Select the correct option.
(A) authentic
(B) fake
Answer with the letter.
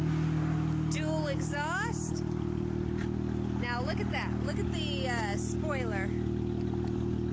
A